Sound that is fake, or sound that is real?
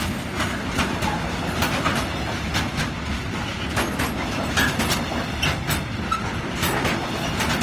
real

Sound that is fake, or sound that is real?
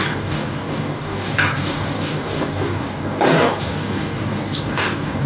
fake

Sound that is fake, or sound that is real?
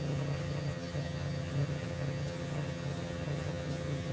fake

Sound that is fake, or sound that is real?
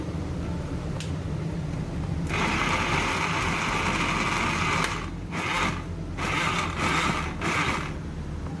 real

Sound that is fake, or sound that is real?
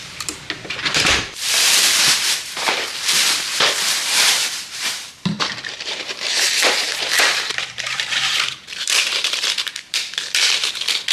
fake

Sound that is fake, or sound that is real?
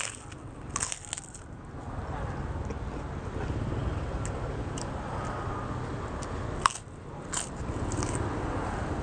real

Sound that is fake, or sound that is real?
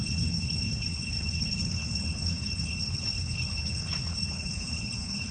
fake